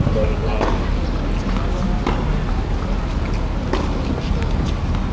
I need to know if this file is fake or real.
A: real